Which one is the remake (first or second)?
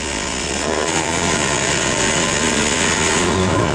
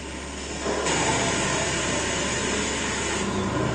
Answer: first